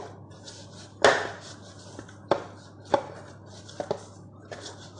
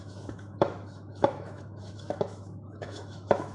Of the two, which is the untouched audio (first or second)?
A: first